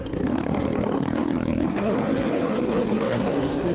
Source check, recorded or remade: remade